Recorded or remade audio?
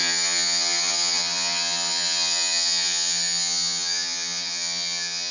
remade